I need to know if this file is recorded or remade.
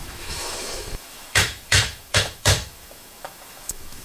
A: remade